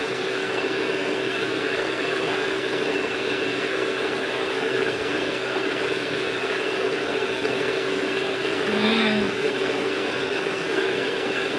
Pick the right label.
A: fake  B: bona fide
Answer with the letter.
A